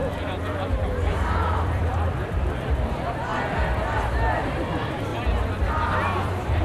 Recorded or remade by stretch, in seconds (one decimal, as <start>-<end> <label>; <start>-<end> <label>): 0.0-3.3 remade; 3.3-4.4 recorded; 4.4-5.1 remade; 5.1-5.6 recorded; 5.6-6.6 remade